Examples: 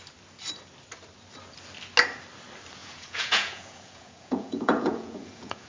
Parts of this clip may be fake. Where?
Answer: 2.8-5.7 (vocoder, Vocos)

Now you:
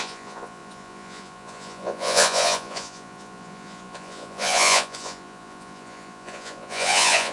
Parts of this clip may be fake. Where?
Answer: 0.0-7.3 (vocoder, Vocos)

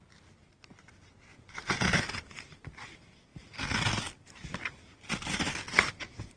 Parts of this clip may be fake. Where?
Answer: 1.3-1.8 (vocoder, Vocos)

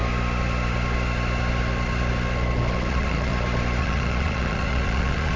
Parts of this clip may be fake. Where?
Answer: 2.9-3.3 (vocoder, Vocos); 3.8-5.4

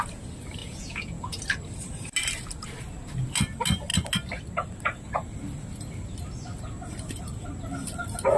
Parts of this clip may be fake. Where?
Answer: 0.6-1.4 (vocoder, Vocos)

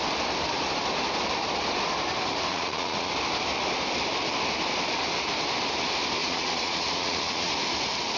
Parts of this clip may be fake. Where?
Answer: 2.5-3.1 (vocoder, Vocos); 6.2-7.5